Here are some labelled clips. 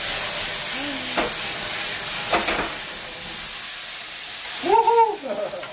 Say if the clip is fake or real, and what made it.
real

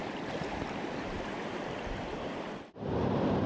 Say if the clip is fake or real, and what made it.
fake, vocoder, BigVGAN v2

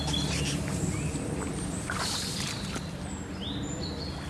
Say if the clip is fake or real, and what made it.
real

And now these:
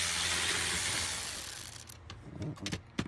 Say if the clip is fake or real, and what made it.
real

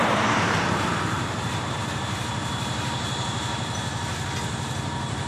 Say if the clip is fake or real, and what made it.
fake, vocoder, BigVGAN v2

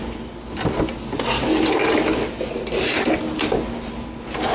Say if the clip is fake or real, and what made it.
real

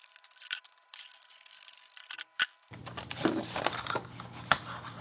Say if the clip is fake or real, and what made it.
fake, vocoder, BigVGAN v2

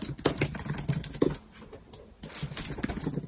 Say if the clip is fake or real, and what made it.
real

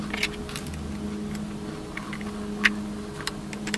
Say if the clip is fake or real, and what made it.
real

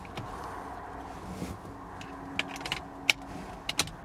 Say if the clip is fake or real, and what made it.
real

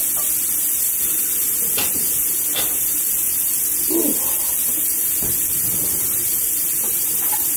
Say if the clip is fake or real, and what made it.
real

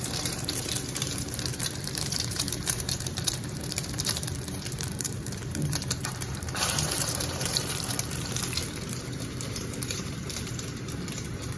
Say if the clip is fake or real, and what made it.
fake, vocoder, BigVGAN v2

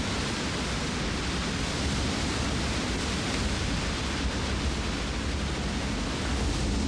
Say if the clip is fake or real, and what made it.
real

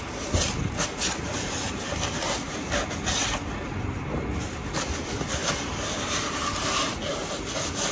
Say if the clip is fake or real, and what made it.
fake, vocoder, BigVGAN v2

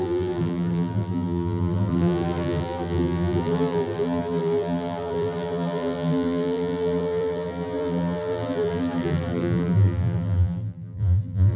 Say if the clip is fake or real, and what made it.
fake, vocoder, BigVGAN v2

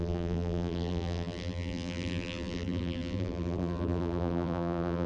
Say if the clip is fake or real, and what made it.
fake, vocoder, BigVGAN v2